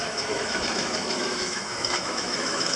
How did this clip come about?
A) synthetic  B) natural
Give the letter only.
A